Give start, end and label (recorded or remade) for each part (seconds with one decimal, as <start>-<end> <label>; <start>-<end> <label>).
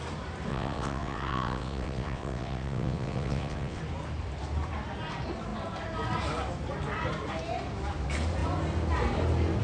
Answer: 0.0-0.5 recorded; 0.5-3.8 remade; 3.8-9.6 recorded